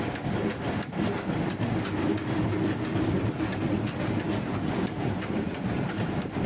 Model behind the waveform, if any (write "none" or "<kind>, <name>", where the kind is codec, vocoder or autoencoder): none